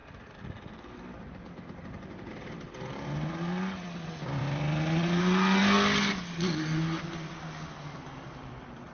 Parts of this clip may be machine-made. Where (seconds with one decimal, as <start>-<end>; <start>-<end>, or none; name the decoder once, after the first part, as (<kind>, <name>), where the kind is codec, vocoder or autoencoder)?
4.4-5.2 (vocoder, BigVGAN v2); 7.9-8.9